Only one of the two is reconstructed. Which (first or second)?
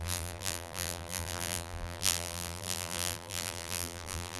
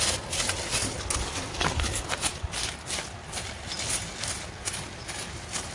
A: first